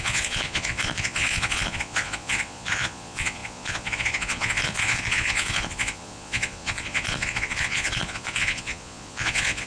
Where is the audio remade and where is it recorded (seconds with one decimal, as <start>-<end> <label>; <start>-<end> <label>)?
0.0-9.7 remade